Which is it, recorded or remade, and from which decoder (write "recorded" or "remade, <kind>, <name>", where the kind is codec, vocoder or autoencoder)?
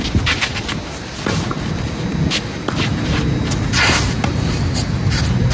recorded